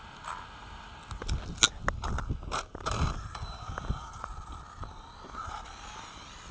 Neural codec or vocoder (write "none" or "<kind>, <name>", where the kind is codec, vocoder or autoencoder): none